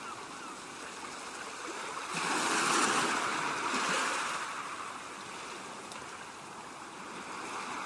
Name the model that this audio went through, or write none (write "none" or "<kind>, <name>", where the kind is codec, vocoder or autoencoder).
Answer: none